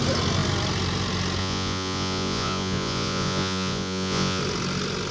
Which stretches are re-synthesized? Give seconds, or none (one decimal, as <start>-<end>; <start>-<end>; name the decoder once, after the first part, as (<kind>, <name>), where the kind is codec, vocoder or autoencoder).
1.4-4.4 (vocoder, Vocos)